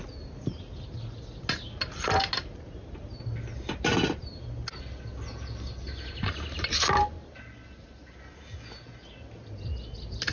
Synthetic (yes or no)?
no